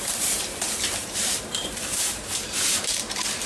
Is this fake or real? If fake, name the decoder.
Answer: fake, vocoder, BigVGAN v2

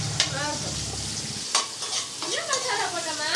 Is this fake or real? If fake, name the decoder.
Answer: real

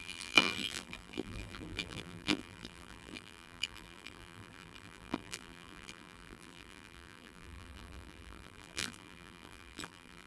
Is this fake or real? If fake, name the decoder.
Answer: fake, vocoder, BigVGAN v2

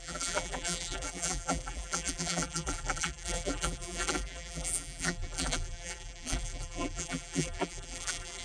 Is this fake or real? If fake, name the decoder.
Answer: fake, vocoder, BigVGAN v2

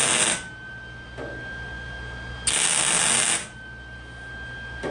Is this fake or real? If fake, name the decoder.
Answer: real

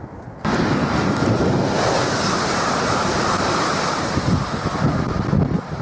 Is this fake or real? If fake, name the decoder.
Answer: fake, vocoder, BigVGAN v2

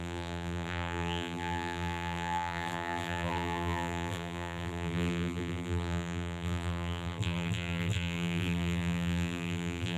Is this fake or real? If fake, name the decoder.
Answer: fake, vocoder, BigVGAN v2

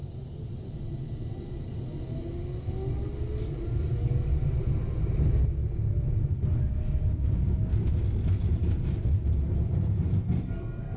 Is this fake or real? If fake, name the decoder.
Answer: real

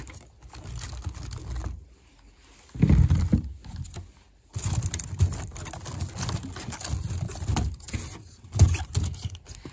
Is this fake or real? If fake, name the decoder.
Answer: real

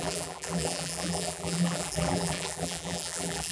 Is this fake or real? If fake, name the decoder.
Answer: fake, vocoder, BigVGAN v2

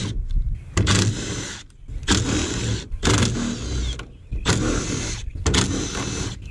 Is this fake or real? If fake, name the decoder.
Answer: real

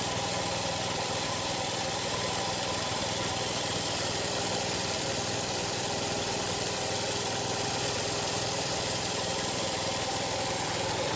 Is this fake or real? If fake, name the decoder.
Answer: fake, vocoder, BigVGAN v2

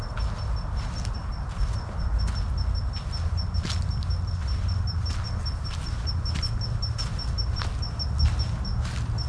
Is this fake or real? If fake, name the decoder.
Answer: real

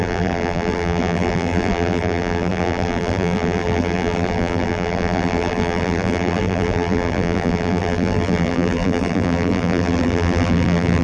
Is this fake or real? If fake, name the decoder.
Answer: fake, vocoder, BigVGAN v2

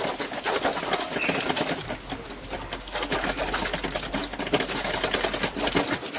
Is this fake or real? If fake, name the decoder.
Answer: real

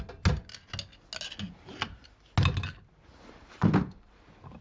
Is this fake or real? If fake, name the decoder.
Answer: real